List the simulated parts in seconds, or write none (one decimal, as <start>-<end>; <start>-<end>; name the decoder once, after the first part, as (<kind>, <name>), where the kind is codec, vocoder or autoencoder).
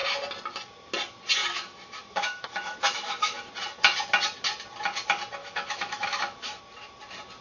1.4-3.5 (autoencoder, DAC-VAE); 5.4-6.6